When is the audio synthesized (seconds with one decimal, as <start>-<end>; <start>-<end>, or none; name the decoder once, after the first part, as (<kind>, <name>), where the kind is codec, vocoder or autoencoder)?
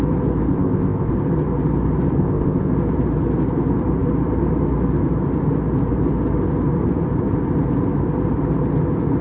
0.5-1.1 (codec, ZipCodec); 2.2-2.7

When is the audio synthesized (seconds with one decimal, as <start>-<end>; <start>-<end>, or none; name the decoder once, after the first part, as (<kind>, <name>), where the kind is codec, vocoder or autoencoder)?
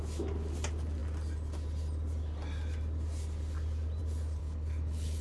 4.4-5.2 (codec, HILCodec)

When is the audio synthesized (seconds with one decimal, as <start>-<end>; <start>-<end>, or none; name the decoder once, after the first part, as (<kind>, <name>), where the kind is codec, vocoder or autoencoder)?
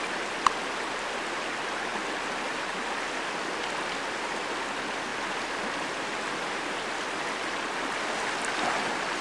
none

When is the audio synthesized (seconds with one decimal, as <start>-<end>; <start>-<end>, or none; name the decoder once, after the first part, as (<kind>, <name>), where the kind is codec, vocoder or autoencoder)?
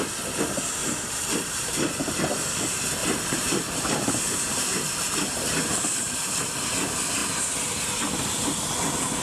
0.8-2.2 (vocoder, BigVGAN v2); 3.0-6.7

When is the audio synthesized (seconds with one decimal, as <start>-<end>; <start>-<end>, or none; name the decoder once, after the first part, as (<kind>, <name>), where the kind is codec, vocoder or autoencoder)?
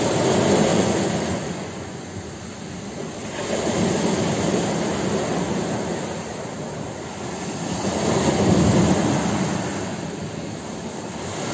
0.7-2.2 (vocoder, Vocos)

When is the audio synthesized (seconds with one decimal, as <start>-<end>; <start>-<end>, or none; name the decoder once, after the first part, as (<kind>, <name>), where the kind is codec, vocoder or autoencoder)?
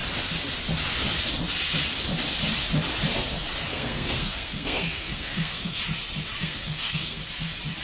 3.7-5.8 (codec, SNAC); 6.4-7.2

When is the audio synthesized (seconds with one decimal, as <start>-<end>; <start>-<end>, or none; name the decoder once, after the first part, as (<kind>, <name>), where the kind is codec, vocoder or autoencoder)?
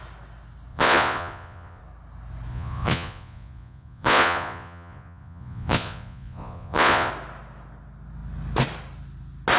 0.7-1.8 (vocoder, Vocos); 2.5-7.1